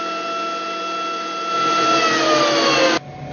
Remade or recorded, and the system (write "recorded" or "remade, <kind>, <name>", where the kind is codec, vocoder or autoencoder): recorded